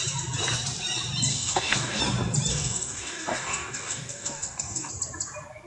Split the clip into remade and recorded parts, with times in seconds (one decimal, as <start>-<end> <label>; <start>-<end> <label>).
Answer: 0.0-1.3 recorded; 1.3-2.0 remade; 2.0-2.5 recorded; 2.5-4.9 remade; 4.9-5.7 recorded